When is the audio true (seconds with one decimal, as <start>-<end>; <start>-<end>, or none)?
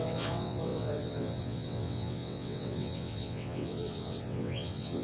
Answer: none